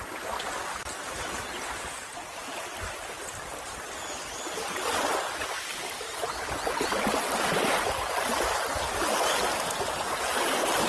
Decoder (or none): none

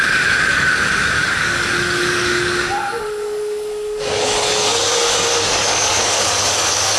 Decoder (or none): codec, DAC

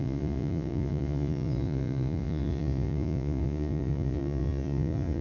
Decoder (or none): vocoder, Vocos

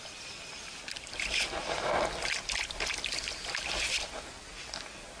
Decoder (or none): none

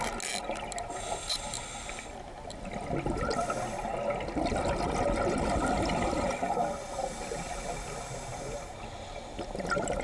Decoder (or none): none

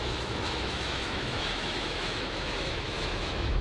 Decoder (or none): autoencoder, DAC-VAE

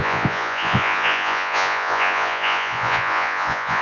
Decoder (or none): vocoder, Vocos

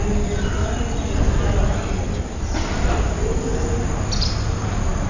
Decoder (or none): none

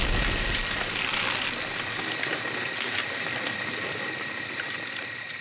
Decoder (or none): none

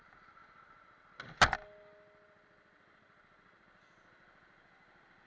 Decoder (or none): none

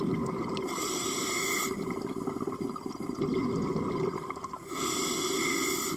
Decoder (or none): none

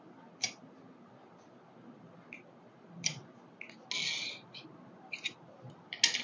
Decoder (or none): none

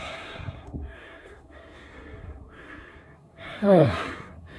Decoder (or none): codec, SNAC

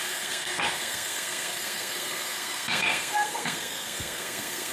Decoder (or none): codec, SNAC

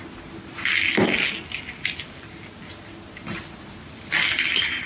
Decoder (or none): none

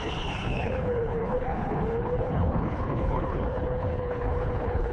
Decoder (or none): codec, HILCodec